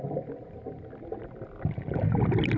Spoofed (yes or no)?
no